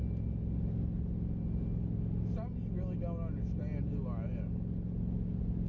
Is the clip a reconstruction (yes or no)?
no